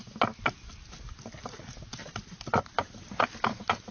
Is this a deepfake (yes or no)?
no